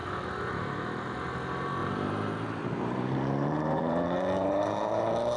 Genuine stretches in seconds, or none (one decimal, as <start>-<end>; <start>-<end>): 0.0-1.8; 5.0-5.4